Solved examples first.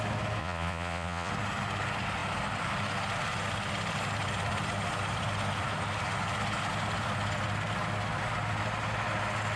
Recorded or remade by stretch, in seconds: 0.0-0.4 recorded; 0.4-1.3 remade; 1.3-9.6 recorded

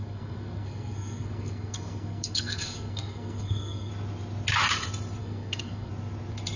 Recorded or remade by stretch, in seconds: 0.0-3.9 remade; 3.9-5.2 recorded; 5.2-5.9 remade; 5.9-6.6 recorded

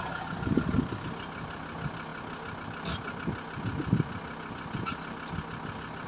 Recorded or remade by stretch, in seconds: 0.0-6.1 recorded

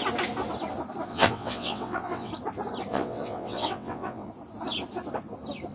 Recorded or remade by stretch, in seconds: 0.0-1.1 recorded; 1.1-2.3 remade; 2.3-2.9 recorded; 2.9-4.3 remade; 4.3-5.7 recorded

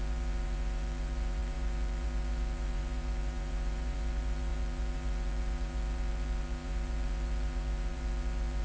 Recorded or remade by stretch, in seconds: 0.0-8.6 remade